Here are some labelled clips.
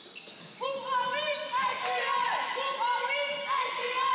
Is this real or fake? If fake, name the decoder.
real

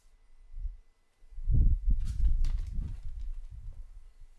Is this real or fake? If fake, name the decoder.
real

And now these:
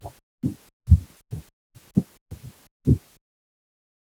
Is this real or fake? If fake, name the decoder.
real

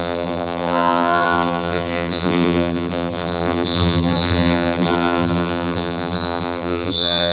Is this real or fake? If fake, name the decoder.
fake, vocoder, BigVGAN v2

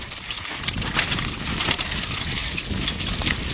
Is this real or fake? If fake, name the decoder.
real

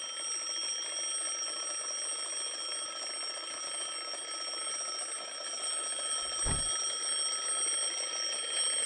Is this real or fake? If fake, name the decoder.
real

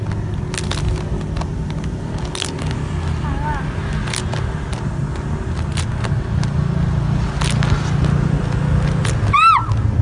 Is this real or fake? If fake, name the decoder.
real